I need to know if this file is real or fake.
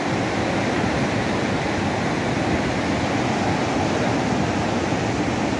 real